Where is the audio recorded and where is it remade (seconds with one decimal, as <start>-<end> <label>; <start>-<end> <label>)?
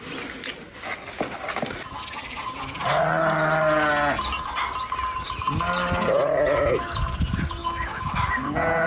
0.0-7.6 recorded; 7.6-8.3 remade; 8.3-8.9 recorded